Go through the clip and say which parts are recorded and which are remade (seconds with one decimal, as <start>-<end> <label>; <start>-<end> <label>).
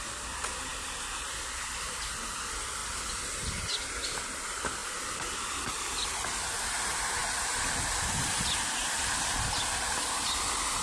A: 0.0-10.8 recorded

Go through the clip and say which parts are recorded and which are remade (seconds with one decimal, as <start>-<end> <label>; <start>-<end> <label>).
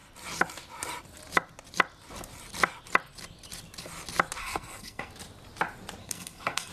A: 0.0-4.4 recorded; 4.4-5.1 remade; 5.1-6.0 recorded; 6.0-6.7 remade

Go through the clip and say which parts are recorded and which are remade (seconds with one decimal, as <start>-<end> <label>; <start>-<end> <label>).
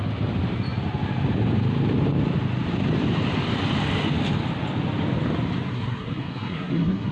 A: 0.0-5.7 recorded; 5.7-7.1 remade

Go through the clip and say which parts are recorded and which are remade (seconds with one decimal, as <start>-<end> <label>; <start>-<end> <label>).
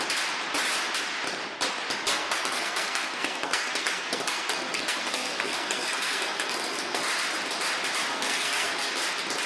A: 0.0-2.1 recorded; 2.1-7.0 remade; 7.0-8.1 recorded; 8.1-8.9 remade; 8.9-9.5 recorded